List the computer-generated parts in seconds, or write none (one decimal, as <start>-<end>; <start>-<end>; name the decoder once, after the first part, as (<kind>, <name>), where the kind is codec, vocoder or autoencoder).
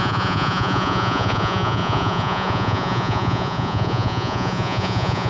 0.0-5.3 (vocoder, Vocos)